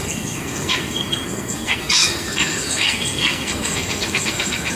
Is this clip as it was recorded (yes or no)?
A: no